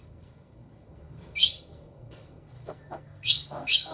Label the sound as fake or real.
fake